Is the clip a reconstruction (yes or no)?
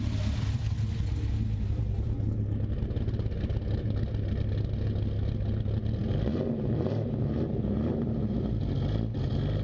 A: no